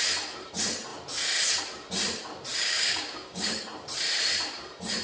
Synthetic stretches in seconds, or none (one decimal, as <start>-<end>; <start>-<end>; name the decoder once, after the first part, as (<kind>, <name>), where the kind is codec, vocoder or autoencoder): 2.5-3.6 (codec, DAC)